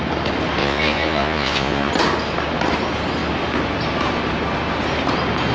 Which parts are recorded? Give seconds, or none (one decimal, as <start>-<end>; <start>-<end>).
0.0-0.6; 1.9-5.5